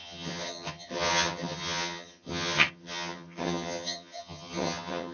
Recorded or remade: remade